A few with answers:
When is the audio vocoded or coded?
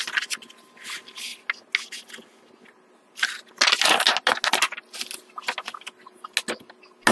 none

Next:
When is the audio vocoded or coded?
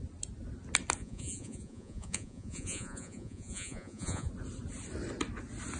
1.0-4.3 (vocoder, Vocos)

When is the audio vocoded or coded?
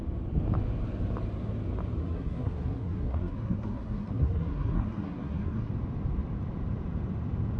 2.0-5.7 (codec, SNAC)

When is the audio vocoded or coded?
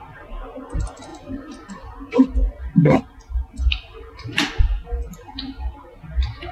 none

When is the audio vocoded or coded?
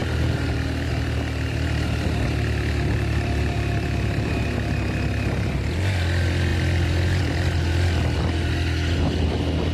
none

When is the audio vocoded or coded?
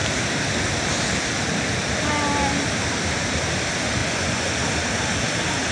4.0-4.5 (vocoder, Vocos)